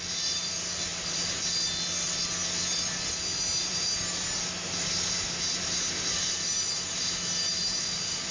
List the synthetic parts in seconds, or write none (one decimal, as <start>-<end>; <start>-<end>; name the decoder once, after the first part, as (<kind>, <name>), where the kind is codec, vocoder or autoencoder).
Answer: 3.6-8.3 (vocoder, BigVGAN v2)